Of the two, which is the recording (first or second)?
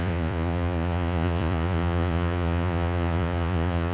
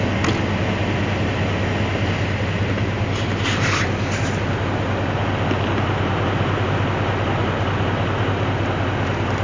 second